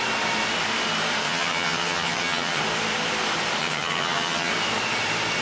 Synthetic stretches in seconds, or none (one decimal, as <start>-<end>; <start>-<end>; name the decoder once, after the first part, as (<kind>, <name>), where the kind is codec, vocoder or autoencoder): 1.2-2.6 (vocoder, HiFi-GAN); 3.6-4.5